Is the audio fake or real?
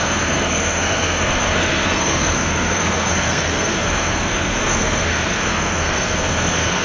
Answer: fake